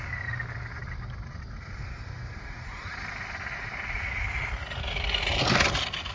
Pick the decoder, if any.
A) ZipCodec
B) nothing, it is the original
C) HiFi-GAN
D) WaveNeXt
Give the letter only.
B